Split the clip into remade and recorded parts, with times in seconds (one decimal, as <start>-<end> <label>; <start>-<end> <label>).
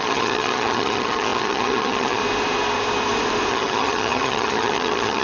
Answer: 0.0-2.2 remade; 2.2-3.5 recorded; 3.5-5.2 remade